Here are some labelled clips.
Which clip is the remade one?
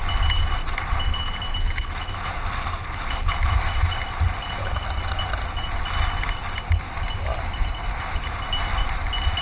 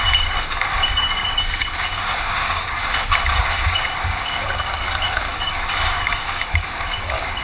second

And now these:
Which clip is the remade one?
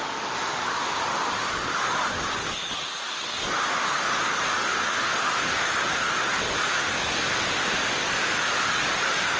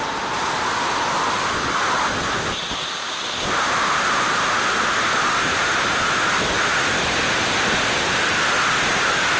first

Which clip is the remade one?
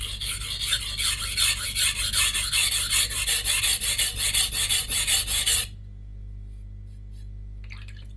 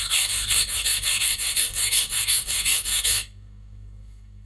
second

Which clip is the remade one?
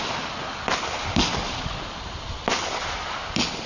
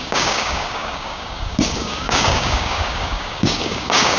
second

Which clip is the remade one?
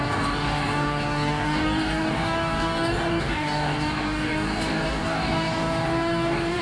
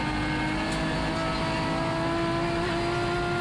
first